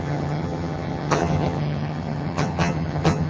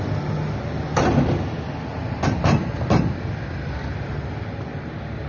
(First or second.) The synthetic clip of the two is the first